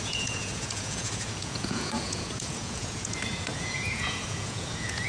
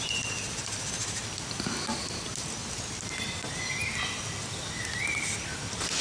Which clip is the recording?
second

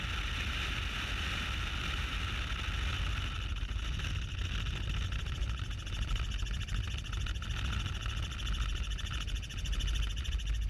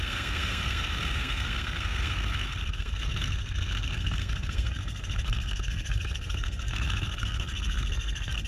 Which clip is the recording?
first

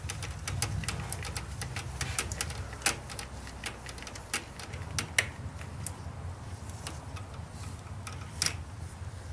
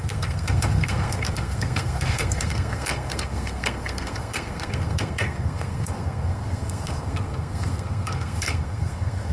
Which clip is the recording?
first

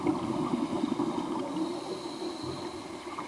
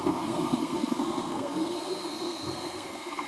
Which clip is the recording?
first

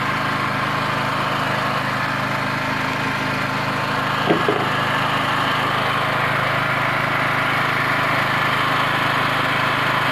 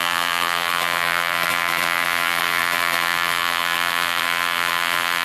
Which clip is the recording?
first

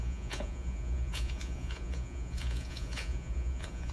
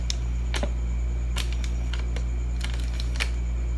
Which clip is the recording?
second